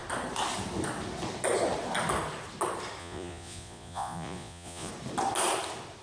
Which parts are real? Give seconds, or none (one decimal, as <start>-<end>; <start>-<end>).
0.0-3.0; 4.9-6.0